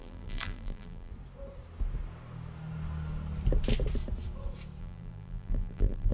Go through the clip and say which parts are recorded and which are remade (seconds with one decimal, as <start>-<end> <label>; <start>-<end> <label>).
0.0-1.1 remade; 1.1-4.8 recorded; 4.8-6.1 remade